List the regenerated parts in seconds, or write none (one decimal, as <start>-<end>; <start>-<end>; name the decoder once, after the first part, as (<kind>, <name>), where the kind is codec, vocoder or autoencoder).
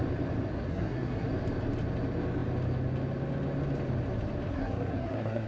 0.7-1.3 (codec, SNAC); 4.5-5.5